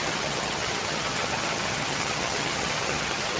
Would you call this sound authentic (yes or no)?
no